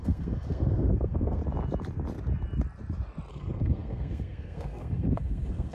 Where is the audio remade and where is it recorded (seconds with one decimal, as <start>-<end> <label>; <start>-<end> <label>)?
0.0-1.4 remade; 1.4-3.3 recorded; 3.3-5.7 remade